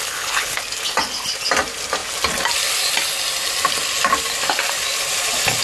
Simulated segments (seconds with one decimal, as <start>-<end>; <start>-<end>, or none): 0.0-0.6